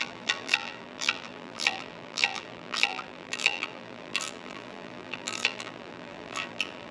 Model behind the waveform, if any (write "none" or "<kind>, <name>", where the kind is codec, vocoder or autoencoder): vocoder, BigVGAN v2